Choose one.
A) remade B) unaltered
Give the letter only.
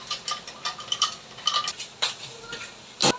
B